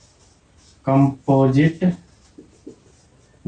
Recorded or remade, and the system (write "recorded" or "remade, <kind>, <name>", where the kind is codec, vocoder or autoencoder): recorded